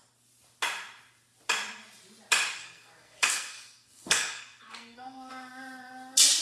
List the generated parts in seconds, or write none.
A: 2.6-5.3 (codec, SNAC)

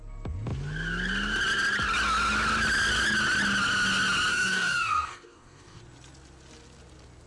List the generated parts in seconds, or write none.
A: 4.3-5.8 (codec, DAC)

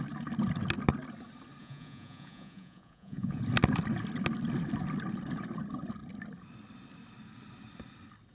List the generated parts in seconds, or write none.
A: 1.6-3.4 (vocoder, Vocos)